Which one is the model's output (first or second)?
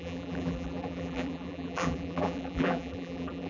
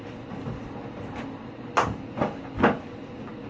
first